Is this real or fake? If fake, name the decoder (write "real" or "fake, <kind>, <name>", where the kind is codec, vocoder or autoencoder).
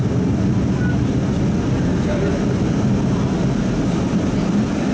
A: real